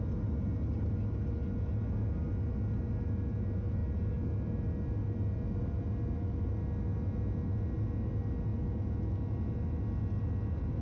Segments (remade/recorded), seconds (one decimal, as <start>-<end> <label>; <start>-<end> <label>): 0.0-10.8 recorded

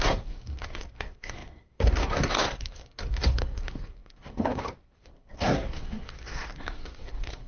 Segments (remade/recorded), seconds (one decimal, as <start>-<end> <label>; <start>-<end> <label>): 0.0-7.5 remade

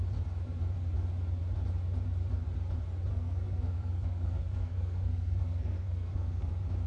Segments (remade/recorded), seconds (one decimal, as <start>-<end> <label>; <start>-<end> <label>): 0.0-3.1 recorded; 3.1-6.5 remade; 6.5-6.9 recorded

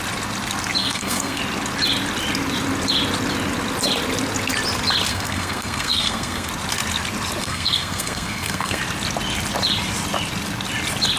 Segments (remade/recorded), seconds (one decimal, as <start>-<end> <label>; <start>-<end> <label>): 0.0-0.8 recorded; 0.8-1.4 remade; 1.4-5.1 recorded; 5.1-6.5 remade; 6.5-7.4 recorded; 7.4-8.8 remade; 8.8-11.2 recorded